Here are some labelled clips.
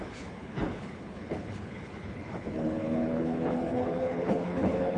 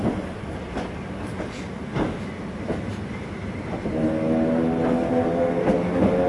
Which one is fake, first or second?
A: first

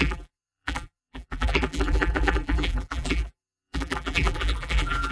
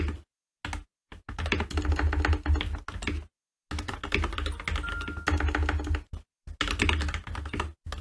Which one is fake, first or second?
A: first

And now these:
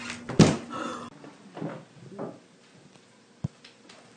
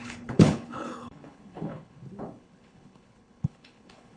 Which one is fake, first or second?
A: second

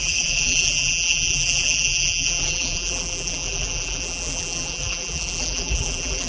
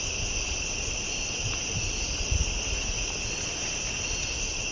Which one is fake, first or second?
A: first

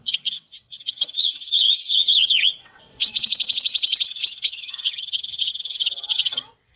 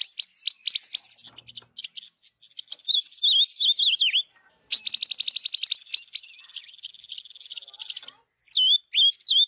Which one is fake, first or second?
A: first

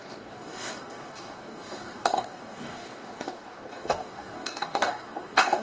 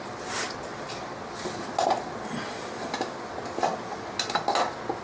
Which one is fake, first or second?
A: first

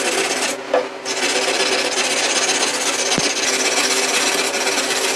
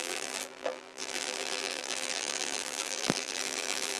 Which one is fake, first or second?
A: second